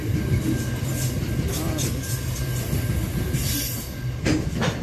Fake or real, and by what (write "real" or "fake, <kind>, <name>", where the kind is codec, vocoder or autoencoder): fake, vocoder, BigVGAN v2